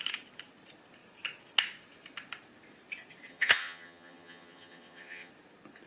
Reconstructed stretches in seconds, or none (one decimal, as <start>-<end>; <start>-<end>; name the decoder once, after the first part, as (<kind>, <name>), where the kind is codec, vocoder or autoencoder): 3.3-5.3 (vocoder, HiFi-GAN)